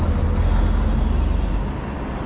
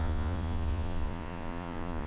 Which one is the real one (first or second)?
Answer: first